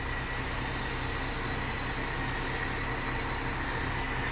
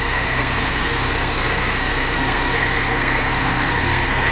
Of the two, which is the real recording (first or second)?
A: first